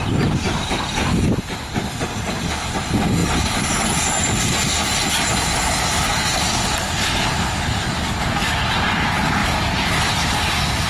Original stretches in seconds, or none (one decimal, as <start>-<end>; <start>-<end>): 0.0-9.4; 10.3-10.9